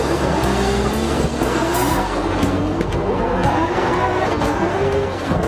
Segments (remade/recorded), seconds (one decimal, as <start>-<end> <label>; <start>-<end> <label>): 0.0-5.5 remade